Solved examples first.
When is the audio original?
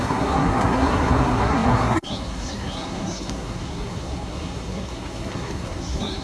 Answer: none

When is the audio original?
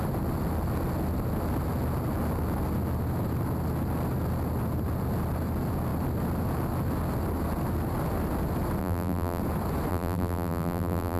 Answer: 0.0-8.8; 9.4-9.9